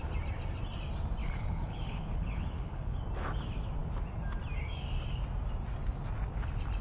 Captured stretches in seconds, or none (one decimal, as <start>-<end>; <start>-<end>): 0.0-1.2; 3.0-6.8